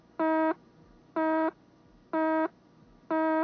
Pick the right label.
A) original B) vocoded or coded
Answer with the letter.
A